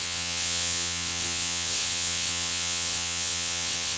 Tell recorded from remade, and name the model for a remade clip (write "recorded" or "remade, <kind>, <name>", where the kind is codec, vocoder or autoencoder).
remade, vocoder, WaveNeXt